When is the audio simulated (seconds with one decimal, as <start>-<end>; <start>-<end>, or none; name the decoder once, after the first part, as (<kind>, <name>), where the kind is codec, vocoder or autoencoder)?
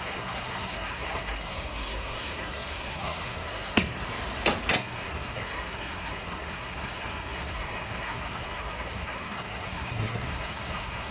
0.0-4.0 (codec, SNAC); 4.7-11.1